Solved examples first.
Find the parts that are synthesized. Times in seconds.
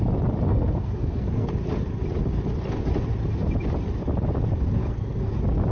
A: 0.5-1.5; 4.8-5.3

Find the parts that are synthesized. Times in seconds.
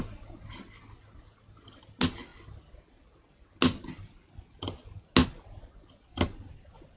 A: none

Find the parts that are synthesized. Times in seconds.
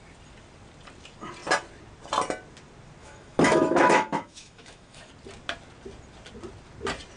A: 3.0-5.1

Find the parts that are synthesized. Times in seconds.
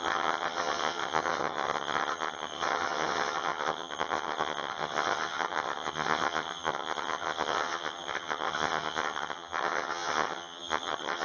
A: 0.0-11.2